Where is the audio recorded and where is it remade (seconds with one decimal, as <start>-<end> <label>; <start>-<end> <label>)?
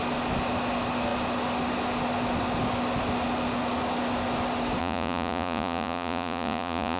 0.0-4.8 recorded; 4.8-7.0 remade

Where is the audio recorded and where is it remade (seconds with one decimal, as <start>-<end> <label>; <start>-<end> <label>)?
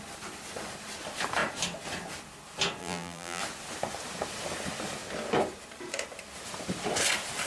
0.0-2.8 recorded; 2.8-3.4 remade; 3.4-7.5 recorded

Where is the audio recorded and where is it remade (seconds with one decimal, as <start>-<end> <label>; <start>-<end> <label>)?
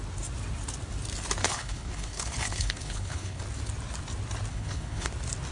0.0-1.4 recorded; 1.4-3.4 remade; 3.4-4.5 recorded; 4.5-5.1 remade; 5.1-5.5 recorded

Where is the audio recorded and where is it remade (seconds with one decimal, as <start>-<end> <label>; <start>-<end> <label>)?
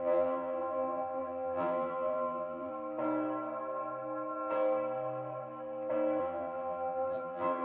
0.0-2.7 remade; 2.7-6.2 recorded; 6.2-7.6 remade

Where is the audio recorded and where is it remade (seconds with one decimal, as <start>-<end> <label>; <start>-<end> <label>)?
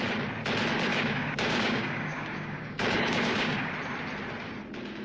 0.0-0.9 recorded; 0.9-3.7 remade; 3.7-5.0 recorded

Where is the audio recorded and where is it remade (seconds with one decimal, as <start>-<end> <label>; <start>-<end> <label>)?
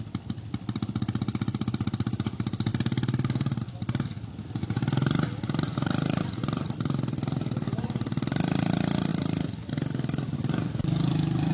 0.0-11.5 remade